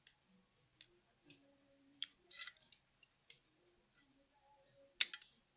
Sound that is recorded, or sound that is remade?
recorded